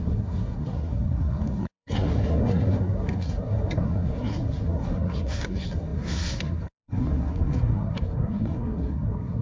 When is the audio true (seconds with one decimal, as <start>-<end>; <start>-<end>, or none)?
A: none